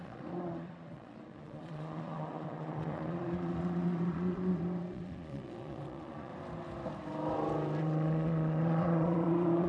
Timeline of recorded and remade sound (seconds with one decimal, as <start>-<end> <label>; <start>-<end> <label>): 0.0-6.3 remade; 6.3-7.8 recorded; 7.8-9.7 remade